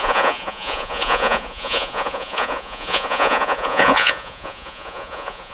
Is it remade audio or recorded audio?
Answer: remade